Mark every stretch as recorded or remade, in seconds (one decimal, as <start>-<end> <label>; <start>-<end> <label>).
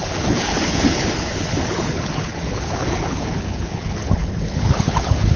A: 0.0-5.4 remade